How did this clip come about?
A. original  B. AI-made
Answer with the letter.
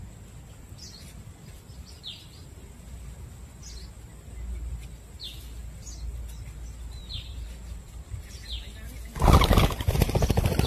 A